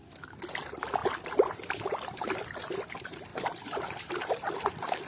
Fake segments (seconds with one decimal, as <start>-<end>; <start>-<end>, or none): none